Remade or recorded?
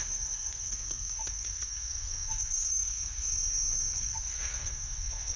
remade